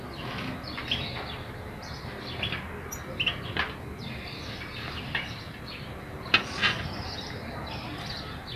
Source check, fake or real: real